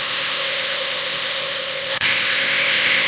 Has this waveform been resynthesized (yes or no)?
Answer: yes